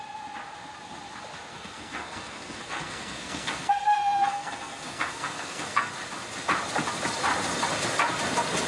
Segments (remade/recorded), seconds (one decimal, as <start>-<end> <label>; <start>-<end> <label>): 0.0-1.5 recorded; 1.5-5.9 remade; 5.9-8.7 recorded

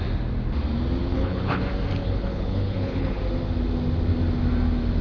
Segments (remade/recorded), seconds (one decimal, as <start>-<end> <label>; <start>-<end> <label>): 0.0-1.0 recorded; 1.0-1.6 remade; 1.6-2.0 recorded; 2.0-3.2 remade; 3.2-5.0 recorded

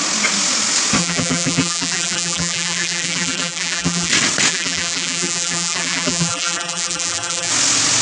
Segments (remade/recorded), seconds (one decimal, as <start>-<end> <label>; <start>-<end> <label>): 0.0-1.0 recorded; 1.0-4.1 remade; 4.1-4.5 recorded; 4.5-7.5 remade; 7.5-8.0 recorded

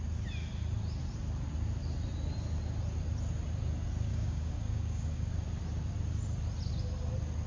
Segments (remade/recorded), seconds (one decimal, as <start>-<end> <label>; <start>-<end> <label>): 0.0-4.1 recorded; 4.1-5.3 remade; 5.3-7.5 recorded

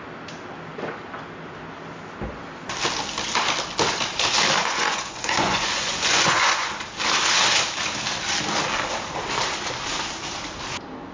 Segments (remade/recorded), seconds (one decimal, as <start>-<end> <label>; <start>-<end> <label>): 0.0-4.6 recorded; 4.6-6.7 remade; 6.7-11.1 recorded

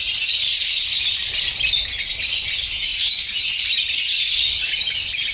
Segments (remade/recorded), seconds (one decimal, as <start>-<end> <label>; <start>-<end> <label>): 0.0-5.3 recorded

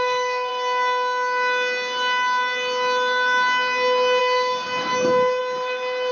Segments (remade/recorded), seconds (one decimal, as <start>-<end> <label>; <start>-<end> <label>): 0.0-0.5 remade; 0.5-4.2 recorded; 4.2-5.4 remade; 5.4-6.1 recorded